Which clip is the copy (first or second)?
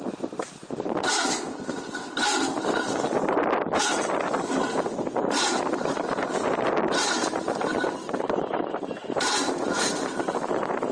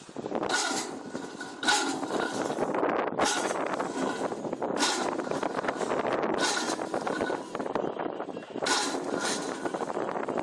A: first